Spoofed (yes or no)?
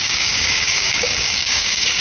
yes